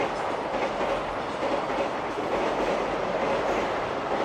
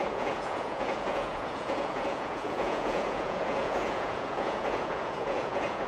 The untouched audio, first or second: first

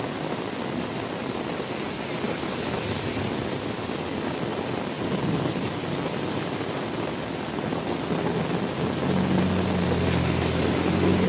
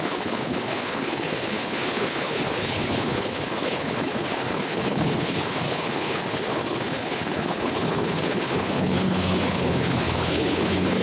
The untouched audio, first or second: first